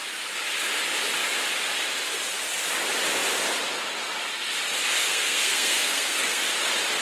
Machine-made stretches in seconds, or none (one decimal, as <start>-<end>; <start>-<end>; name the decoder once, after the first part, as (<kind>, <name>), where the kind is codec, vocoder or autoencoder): 5.0-6.5 (codec, SNAC)